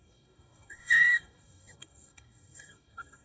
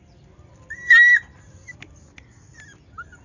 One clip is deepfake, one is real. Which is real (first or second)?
second